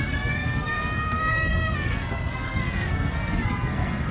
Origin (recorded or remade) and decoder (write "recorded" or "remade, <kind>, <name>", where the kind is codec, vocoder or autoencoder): remade, codec, SNAC